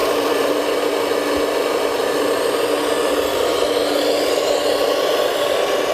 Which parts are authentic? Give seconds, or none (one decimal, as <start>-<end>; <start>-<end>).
0.6-5.9